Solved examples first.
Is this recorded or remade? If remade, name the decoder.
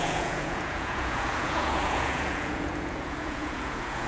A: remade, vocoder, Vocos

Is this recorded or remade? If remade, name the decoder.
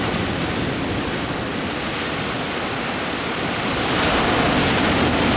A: recorded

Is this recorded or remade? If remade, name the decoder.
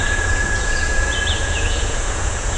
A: remade, vocoder, Vocos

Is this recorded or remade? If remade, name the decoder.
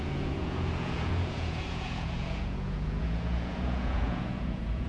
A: remade, vocoder, Vocos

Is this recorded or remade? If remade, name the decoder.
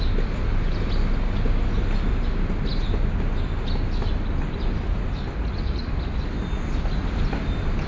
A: recorded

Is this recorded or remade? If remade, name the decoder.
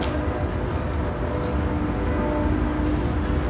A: recorded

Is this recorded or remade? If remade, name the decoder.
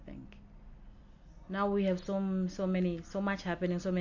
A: recorded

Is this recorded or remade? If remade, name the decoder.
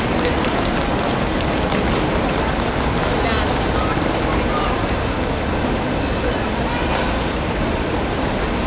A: recorded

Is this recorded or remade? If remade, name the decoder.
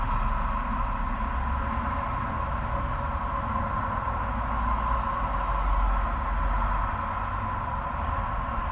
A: recorded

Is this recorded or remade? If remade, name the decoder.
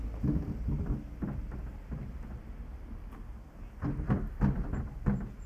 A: recorded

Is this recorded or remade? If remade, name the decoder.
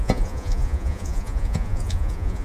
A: remade, vocoder, Vocos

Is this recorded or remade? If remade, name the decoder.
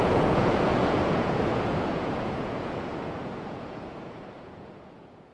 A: remade, vocoder, Vocos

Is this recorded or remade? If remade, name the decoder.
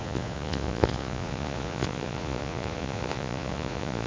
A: remade, vocoder, Vocos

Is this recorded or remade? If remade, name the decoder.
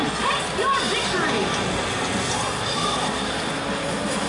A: recorded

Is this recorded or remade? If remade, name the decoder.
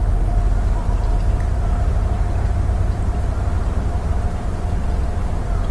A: recorded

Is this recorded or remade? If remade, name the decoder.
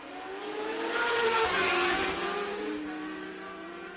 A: remade, vocoder, Vocos